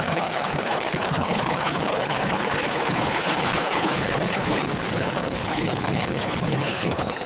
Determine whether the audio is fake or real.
fake